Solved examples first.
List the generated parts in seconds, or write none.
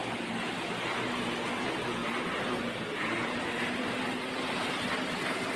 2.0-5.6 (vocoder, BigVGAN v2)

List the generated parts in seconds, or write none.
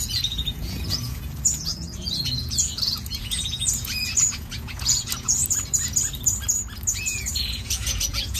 0.0-5.4 (vocoder, Vocos); 7.0-8.4